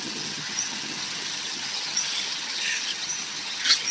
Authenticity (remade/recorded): remade